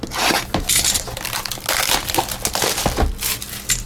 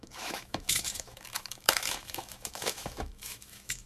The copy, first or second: second